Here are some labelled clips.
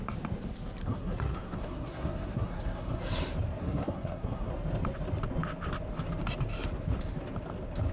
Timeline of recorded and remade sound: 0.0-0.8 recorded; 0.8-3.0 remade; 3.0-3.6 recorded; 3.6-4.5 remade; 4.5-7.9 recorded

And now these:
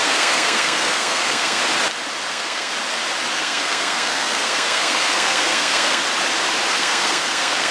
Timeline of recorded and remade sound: 0.0-1.6 remade; 1.6-2.3 recorded; 2.3-2.7 remade; 2.7-3.3 recorded; 3.3-6.0 remade; 6.0-6.7 recorded; 6.7-7.7 remade

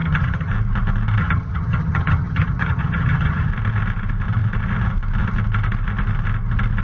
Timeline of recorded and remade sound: 0.0-0.5 remade; 0.5-1.2 recorded; 1.2-3.5 remade; 3.5-6.8 recorded

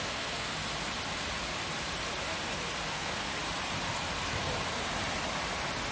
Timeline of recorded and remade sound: 0.0-0.5 remade; 0.5-2.9 recorded; 2.9-3.3 remade; 3.3-5.9 recorded